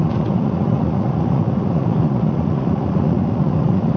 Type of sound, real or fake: fake